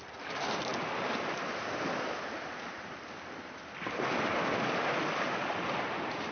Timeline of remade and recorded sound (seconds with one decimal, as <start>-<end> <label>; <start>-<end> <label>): 0.0-6.3 recorded